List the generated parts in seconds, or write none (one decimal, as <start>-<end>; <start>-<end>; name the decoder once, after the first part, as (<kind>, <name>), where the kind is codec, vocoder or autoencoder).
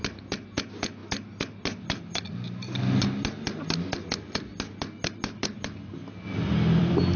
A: none